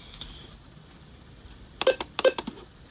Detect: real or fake real